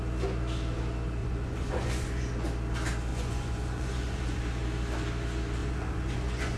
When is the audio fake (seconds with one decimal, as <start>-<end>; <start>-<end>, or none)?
1.2-2.3; 3.1-4.4; 5.6-6.6